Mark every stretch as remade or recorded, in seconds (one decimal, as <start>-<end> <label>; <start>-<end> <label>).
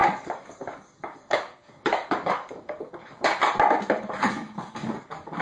0.0-3.4 remade; 3.4-4.0 recorded; 4.0-5.4 remade